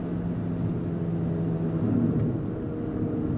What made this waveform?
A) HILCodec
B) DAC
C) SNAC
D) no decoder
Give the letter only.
D